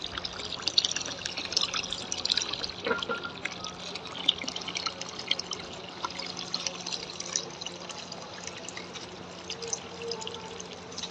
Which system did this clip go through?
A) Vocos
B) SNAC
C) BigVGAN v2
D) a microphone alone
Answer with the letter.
D